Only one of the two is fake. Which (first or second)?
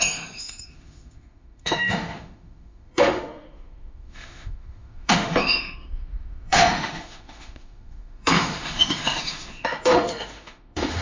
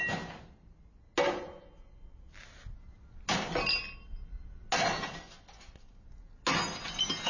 first